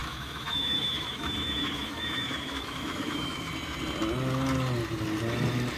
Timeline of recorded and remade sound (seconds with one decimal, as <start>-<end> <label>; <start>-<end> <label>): 0.0-3.5 remade; 3.5-5.8 recorded

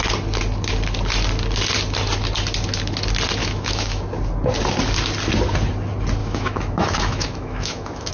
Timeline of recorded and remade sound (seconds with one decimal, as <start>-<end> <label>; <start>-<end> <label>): 0.0-3.4 recorded; 3.4-4.0 remade; 4.0-6.2 recorded; 6.2-8.1 remade

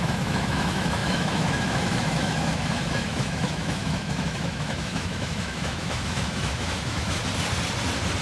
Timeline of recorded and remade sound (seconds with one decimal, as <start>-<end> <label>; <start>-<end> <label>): 0.0-7.2 remade; 7.2-8.2 recorded

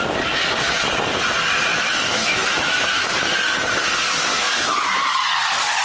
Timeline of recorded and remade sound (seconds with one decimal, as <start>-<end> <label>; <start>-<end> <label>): 0.0-1.7 recorded; 1.7-3.1 remade; 3.1-4.3 recorded; 4.3-5.2 remade; 5.2-5.8 recorded